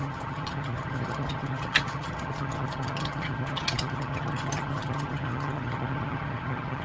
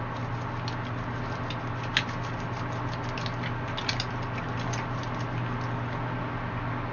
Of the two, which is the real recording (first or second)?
second